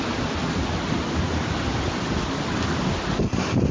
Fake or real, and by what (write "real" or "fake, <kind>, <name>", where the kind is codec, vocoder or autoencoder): real